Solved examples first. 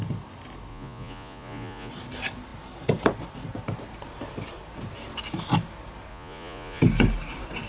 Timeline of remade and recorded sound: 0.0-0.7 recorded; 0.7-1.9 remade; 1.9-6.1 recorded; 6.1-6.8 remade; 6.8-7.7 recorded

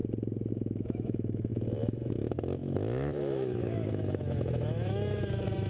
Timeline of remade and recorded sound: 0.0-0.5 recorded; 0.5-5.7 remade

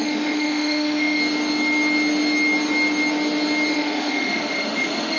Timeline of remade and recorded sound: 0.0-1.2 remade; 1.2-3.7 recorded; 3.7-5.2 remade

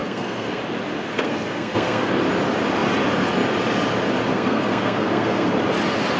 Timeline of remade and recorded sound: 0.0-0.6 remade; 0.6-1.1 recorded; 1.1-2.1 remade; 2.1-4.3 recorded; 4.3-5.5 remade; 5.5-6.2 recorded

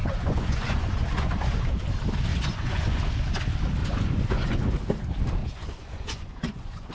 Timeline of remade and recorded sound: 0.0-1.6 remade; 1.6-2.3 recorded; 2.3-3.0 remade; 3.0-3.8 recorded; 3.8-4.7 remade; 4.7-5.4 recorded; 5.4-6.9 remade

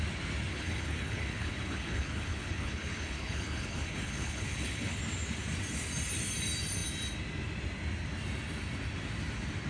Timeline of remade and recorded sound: 0.0-0.5 recorded; 0.5-5.0 remade; 5.0-9.7 recorded